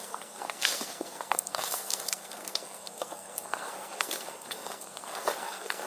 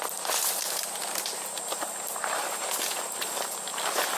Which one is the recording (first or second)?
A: second